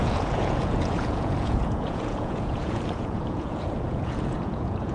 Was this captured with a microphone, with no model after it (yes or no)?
no